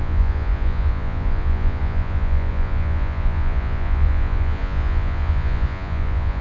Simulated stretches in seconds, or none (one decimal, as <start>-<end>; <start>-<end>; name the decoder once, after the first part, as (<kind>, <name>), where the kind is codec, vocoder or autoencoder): 0.0-6.4 (vocoder, Vocos)